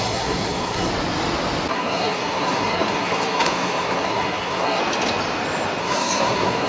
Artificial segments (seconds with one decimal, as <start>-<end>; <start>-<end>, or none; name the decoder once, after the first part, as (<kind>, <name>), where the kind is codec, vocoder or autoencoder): 0.0-0.9 (codec, SNAC); 1.7-4.8; 5.8-6.7

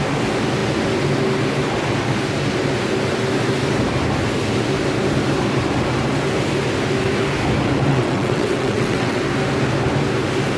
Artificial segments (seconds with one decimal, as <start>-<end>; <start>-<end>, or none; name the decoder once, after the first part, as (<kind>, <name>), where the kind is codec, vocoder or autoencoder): 7.9-9.2 (vocoder, WaveNeXt)

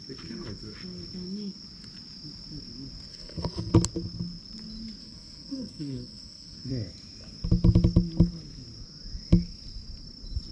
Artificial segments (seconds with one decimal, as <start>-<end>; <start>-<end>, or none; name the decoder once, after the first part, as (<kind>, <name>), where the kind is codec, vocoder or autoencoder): 3.1-3.7 (codec, SNAC); 5.0-6.7

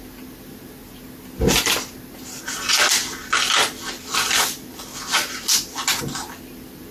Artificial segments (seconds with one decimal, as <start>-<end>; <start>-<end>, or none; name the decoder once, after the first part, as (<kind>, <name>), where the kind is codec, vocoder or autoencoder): 0.0-0.8 (vocoder, BigVGAN v2); 2.4-4.9; 6.0-6.9

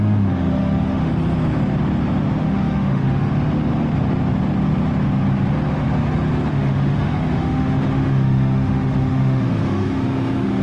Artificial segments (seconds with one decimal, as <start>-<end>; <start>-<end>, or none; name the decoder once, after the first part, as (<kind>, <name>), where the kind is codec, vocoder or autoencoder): 0.0-1.1 (autoencoder, DAC-VAE); 2.4-3.3; 6.5-10.6

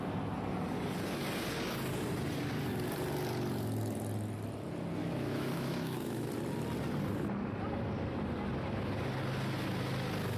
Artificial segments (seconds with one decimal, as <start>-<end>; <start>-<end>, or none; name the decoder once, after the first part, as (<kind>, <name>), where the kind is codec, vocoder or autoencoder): 5.0-6.3 (autoencoder, DAC-VAE)